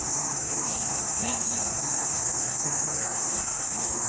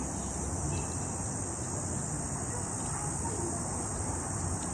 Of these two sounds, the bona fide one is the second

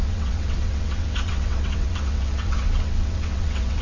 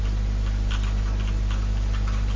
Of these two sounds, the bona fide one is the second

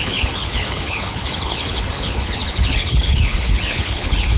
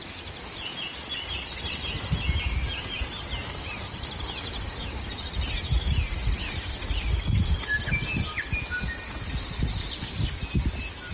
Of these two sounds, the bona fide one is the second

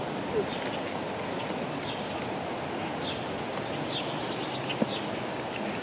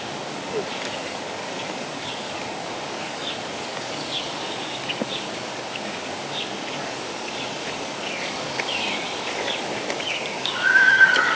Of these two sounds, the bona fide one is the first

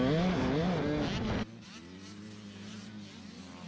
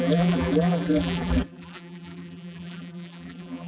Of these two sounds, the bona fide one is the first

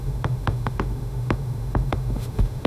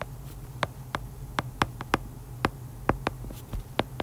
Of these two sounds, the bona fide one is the second